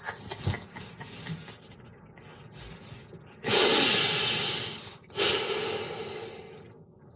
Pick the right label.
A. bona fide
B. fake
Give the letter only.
A